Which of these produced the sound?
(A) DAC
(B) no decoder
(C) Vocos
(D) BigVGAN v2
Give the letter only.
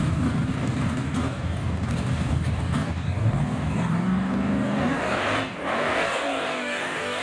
A